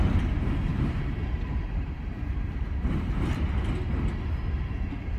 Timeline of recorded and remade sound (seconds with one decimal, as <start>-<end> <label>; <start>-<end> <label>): 0.0-0.7 recorded; 0.7-3.3 remade; 3.3-5.2 recorded